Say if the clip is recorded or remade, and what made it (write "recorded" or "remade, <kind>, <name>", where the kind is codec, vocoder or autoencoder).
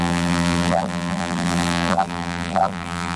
remade, vocoder, BigVGAN v2